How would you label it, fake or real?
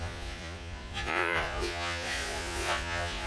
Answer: fake